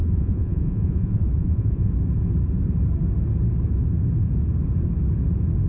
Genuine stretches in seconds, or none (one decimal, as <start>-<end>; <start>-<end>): 1.9-5.7

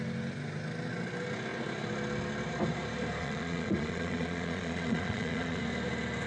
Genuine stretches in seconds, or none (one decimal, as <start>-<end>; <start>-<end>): 0.0-3.2; 5.6-6.3